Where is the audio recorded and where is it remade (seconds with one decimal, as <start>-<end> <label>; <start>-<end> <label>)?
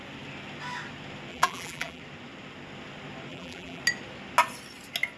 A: 0.0-1.3 recorded; 1.3-2.0 remade; 2.0-3.3 recorded; 3.3-3.8 remade; 3.8-5.2 recorded